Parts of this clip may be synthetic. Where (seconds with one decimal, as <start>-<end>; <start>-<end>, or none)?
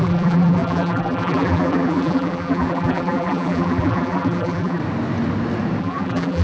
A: 0.0-4.8; 5.8-6.4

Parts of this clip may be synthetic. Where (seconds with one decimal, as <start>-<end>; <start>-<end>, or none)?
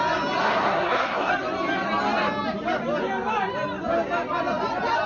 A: 0.4-1.3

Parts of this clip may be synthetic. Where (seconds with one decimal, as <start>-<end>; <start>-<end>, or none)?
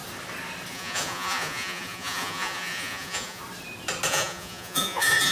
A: 0.7-3.4; 4.1-5.3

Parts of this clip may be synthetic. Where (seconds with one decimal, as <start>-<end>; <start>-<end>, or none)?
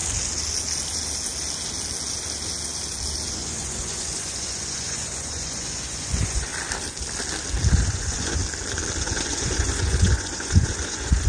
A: 3.3-6.5; 7.7-8.4; 9.0-11.3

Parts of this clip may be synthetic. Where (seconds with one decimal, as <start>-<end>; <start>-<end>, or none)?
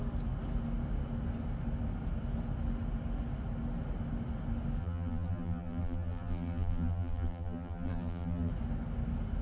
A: 4.8-8.5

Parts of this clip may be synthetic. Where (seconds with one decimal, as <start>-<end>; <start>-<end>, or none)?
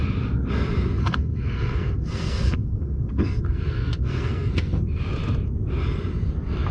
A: 1.0-5.0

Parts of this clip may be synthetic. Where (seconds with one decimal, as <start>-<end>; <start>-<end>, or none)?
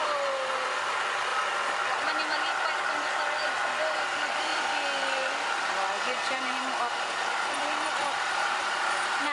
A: 0.0-1.3; 3.8-4.5; 6.0-9.3